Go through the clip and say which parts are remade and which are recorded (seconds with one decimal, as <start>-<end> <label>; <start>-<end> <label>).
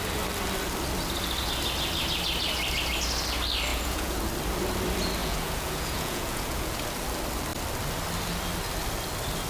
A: 0.0-3.7 recorded; 3.7-4.2 remade; 4.2-5.2 recorded; 5.2-6.8 remade; 6.8-9.5 recorded